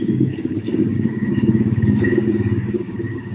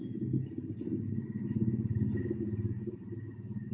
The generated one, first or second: first